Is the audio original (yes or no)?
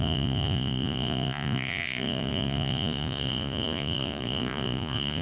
no